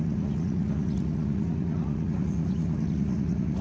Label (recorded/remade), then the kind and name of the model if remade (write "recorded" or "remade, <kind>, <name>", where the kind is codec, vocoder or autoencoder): remade, vocoder, Vocos